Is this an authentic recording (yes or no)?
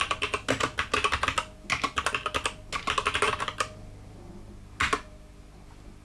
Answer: yes